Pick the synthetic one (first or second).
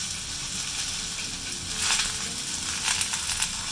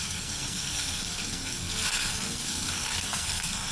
second